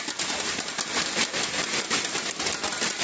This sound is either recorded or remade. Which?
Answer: recorded